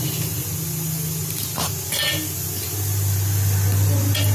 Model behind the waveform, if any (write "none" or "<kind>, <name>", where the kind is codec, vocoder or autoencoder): none